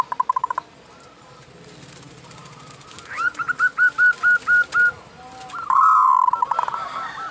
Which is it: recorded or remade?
recorded